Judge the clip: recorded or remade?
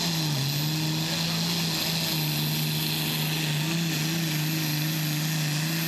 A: recorded